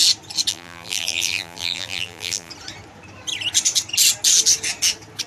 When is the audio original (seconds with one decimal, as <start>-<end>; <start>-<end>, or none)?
0.0-0.5; 2.5-5.3